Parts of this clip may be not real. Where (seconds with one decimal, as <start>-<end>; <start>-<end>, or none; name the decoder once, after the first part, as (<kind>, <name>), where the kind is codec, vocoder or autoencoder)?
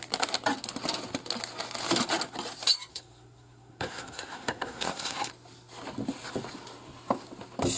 2.9-5.3 (codec, SNAC)